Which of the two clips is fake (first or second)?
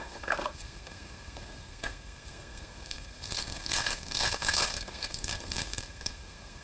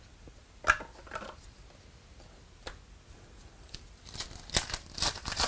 first